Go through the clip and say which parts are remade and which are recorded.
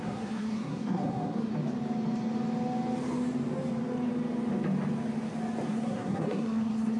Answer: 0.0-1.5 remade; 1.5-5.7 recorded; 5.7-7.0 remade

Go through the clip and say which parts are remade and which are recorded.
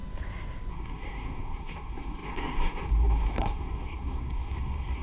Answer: 0.0-0.7 recorded; 0.7-5.0 remade